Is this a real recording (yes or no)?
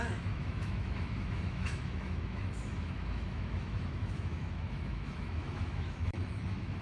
no